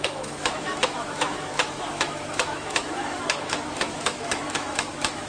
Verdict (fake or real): fake